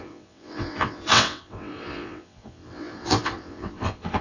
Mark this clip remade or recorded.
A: remade